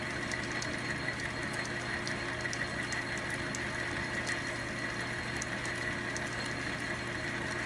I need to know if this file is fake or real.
real